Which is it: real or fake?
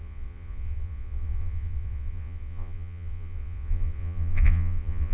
fake